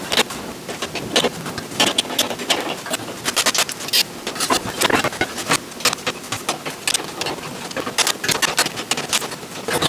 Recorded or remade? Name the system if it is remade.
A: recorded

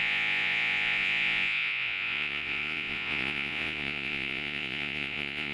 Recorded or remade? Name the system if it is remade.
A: remade, vocoder, Vocos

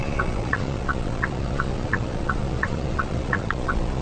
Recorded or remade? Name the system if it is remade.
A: remade, vocoder, Vocos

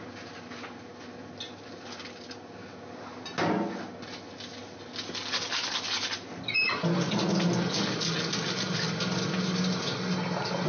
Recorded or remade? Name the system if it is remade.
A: recorded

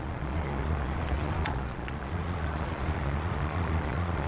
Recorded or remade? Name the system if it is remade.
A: remade, vocoder, Vocos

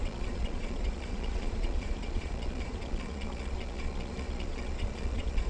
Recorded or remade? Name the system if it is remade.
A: remade, vocoder, Vocos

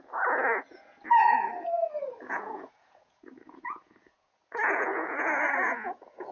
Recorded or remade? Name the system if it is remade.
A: remade, vocoder, Vocos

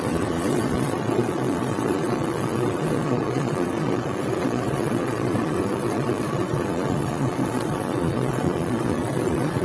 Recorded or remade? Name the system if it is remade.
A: remade, vocoder, Vocos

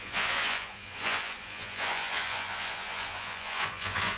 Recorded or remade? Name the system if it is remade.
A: remade, vocoder, Vocos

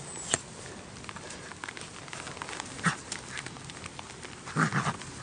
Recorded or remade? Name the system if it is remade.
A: recorded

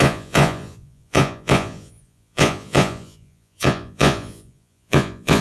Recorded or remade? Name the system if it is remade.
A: remade, vocoder, Vocos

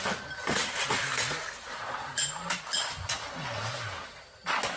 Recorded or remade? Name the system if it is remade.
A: recorded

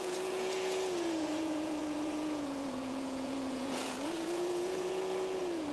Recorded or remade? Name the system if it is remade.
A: remade, vocoder, Vocos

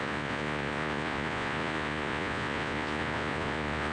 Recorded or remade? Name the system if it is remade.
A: remade, vocoder, Vocos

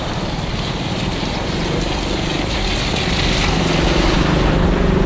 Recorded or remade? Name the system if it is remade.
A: recorded